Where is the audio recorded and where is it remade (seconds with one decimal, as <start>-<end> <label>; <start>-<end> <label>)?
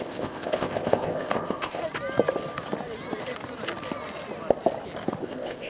0.0-1.8 remade; 1.8-5.2 recorded; 5.2-5.7 remade